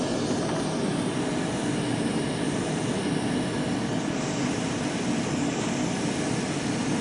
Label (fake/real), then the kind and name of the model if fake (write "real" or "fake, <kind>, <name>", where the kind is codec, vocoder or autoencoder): real